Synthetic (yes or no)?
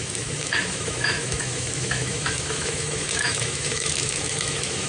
yes